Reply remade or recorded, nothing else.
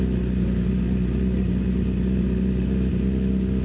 recorded